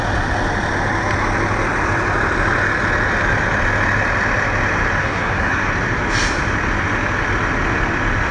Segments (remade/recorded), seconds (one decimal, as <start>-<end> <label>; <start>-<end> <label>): 0.0-5.0 recorded; 5.0-5.7 remade; 5.7-8.3 recorded